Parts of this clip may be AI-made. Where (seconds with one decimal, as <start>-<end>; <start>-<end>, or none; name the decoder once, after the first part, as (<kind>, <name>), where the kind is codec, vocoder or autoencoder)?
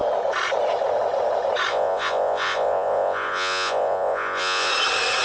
1.7-4.7 (vocoder, Vocos)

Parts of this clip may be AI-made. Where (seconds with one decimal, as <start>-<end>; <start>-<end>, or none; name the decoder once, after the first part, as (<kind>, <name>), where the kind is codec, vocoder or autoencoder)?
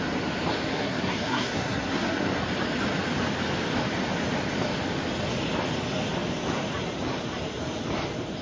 0.7-2.4 (codec, SNAC)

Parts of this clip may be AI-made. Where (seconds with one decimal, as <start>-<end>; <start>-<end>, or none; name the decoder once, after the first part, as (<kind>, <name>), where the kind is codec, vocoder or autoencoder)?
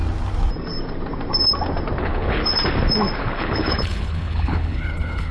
2.0-2.4 (codec, HILCodec); 3.2-5.3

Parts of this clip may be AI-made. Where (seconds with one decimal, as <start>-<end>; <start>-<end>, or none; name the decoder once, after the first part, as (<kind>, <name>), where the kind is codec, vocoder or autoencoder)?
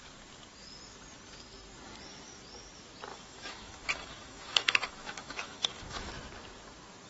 3.1-6.1 (autoencoder, DAC-VAE)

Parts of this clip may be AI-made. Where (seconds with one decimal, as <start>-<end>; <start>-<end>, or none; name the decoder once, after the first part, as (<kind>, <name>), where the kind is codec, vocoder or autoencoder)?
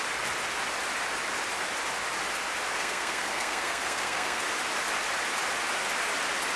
2.8-4.4 (codec, SNAC)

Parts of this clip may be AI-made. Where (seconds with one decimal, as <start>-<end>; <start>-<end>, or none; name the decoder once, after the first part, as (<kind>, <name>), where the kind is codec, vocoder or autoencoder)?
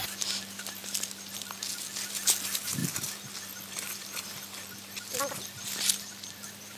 0.8-1.4 (vocoder, BigVGAN v2)